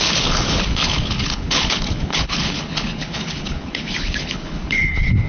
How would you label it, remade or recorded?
remade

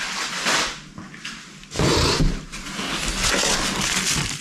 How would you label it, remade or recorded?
recorded